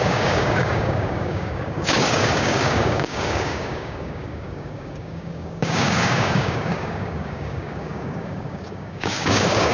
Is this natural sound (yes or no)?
no